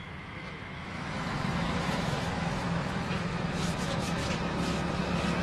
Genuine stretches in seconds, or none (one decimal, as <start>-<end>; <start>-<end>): 4.2-5.4